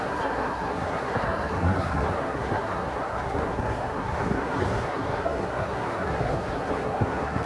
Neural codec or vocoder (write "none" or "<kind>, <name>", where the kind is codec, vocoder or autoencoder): codec, SNAC